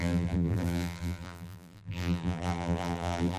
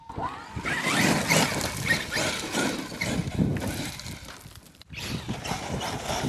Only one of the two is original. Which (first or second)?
second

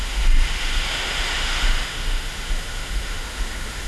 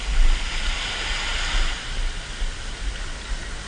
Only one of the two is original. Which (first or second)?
second